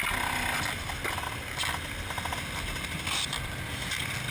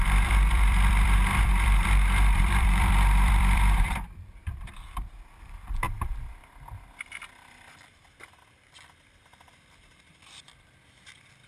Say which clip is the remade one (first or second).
second